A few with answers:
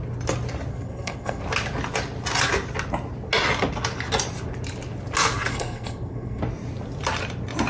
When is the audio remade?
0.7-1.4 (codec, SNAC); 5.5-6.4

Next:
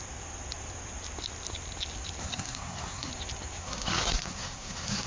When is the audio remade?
2.2-3.1 (codec, SNAC); 3.6-5.1

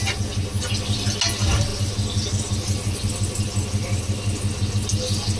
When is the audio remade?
none

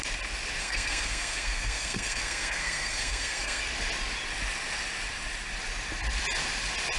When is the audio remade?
0.6-3.6 (codec, SNAC)

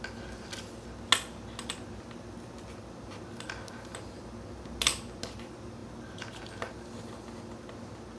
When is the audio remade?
none

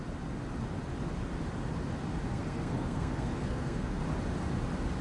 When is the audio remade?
2.3-4.0 (codec, SNAC)